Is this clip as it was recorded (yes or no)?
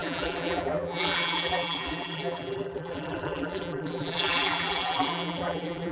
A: no